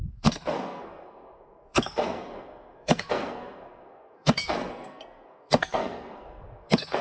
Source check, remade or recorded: remade